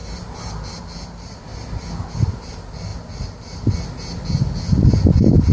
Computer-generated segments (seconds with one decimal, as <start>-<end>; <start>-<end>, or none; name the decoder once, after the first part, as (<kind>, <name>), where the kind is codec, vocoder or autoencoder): none

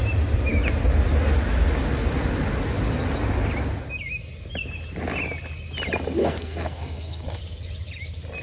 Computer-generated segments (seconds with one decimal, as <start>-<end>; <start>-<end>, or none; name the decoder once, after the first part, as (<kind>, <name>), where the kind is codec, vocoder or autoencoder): 6.2-7.4 (codec, SNAC)

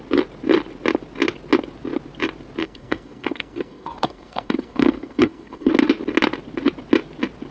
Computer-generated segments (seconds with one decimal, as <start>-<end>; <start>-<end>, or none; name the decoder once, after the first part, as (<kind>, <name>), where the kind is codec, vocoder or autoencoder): 2.6-5.7 (codec, SNAC)

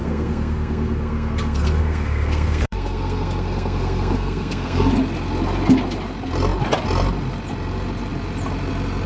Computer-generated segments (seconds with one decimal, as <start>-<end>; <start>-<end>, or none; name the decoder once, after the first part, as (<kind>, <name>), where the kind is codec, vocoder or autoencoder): 0.0-4.9 (codec, SNAC)

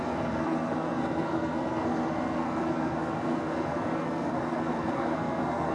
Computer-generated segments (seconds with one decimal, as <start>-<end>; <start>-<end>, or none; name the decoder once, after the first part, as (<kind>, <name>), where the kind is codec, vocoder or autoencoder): 0.0-5.7 (codec, SNAC)

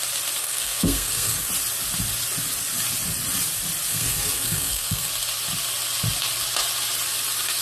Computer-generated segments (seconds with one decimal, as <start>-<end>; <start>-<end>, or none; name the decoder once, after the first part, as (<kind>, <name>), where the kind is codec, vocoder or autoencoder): 0.4-1.5 (codec, SNAC); 3.9-5.1

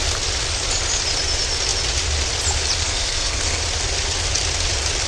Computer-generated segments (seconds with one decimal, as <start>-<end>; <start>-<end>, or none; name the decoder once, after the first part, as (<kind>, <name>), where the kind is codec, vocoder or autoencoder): 2.8-3.6 (codec, SNAC)

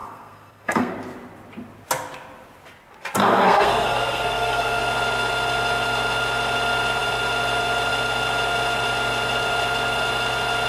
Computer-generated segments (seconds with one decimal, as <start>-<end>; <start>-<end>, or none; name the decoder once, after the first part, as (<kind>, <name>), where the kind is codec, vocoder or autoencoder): 0.0-0.9 (codec, SNAC); 3.2-4.8